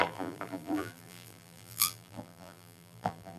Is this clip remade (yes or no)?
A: yes